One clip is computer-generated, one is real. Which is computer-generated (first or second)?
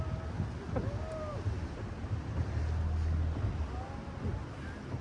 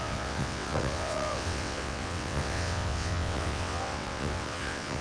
second